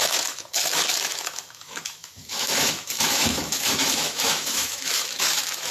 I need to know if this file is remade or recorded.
remade